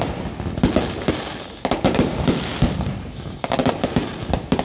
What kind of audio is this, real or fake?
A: real